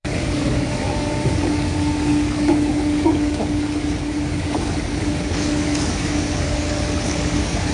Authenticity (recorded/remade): remade